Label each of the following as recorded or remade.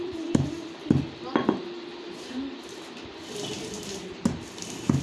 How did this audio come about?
recorded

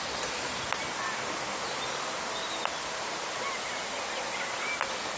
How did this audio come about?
recorded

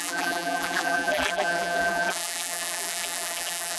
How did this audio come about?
remade